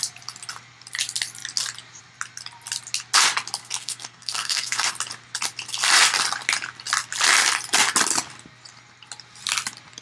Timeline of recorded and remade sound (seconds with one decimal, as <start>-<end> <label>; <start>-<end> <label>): 0.0-3.6 recorded; 3.6-4.9 remade; 4.9-10.0 recorded